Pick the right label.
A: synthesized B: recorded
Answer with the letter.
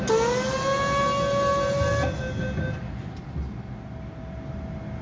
B